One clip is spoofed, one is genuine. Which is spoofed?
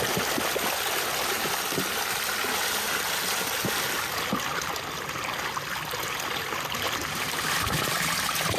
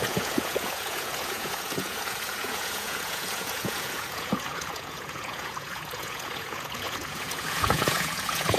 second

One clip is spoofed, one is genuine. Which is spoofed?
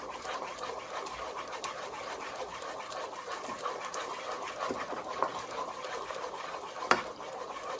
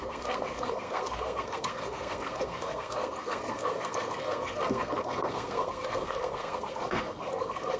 second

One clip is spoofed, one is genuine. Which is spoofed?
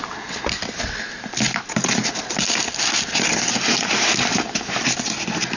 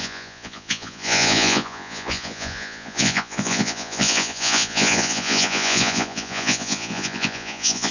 second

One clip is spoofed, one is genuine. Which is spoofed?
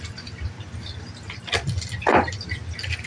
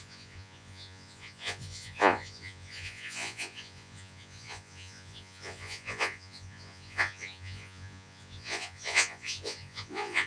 second